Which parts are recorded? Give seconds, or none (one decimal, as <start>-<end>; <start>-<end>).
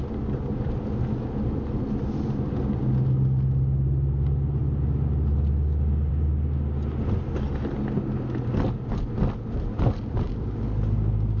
0.0-11.4